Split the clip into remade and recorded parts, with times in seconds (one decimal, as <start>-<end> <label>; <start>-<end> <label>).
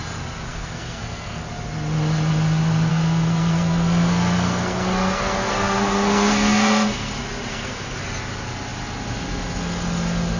0.0-0.5 recorded; 0.5-1.4 remade; 1.4-2.9 recorded; 2.9-7.1 remade; 7.1-7.5 recorded; 7.5-8.0 remade; 8.0-10.4 recorded